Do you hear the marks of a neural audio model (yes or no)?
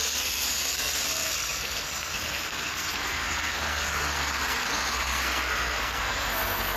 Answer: yes